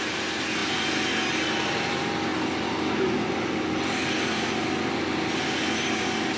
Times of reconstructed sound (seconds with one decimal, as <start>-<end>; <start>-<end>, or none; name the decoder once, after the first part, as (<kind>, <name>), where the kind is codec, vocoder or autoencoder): 0.0-0.6 (vocoder, BigVGAN v2); 1.6-2.3